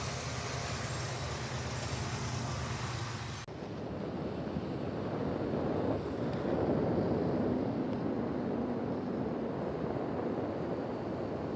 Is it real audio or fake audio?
real